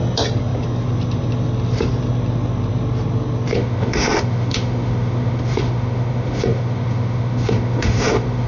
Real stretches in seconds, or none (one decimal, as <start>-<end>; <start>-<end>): 0.0-3.5